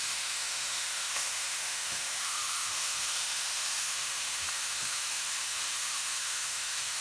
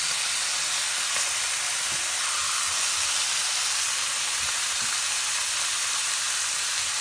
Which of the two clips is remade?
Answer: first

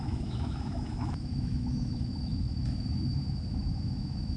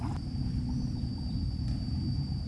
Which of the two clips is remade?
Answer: first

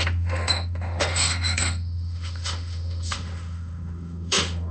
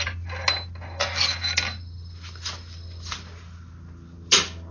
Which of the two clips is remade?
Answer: first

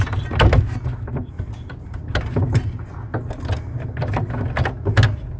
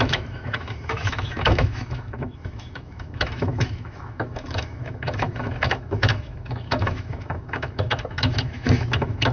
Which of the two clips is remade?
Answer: second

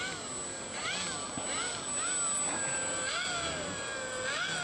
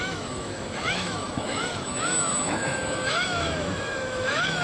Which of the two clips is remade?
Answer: second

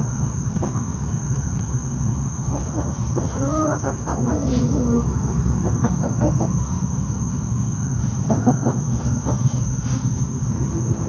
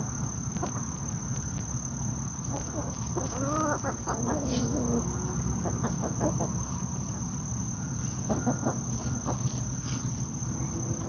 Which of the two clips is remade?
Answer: first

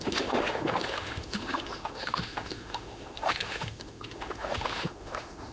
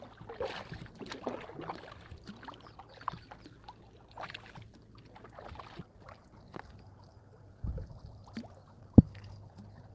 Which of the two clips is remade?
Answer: first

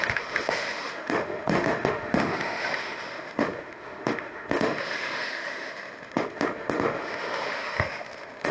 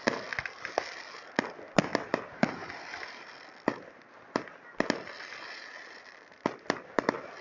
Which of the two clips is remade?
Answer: first